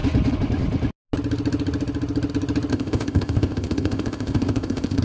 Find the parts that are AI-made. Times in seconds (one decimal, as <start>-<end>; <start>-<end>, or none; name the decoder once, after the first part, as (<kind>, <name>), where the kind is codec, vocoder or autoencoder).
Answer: 2.7-5.0 (codec, ZipCodec)